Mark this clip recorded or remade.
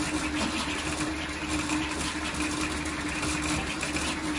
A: recorded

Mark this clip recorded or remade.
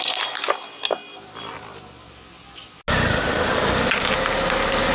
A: recorded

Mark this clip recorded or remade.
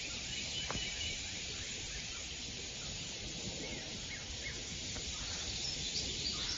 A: remade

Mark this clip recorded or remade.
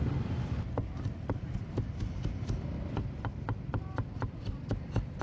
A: recorded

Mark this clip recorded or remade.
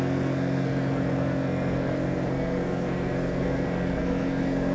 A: remade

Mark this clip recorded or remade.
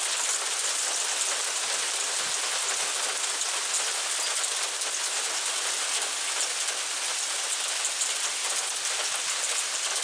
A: recorded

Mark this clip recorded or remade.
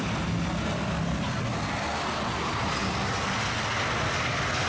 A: recorded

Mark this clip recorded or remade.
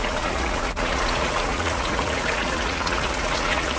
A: remade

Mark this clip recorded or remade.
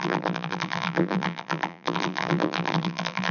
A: remade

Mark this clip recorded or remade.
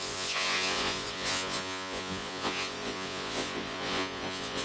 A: remade